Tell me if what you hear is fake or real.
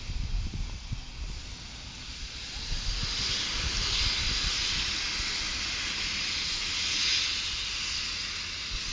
real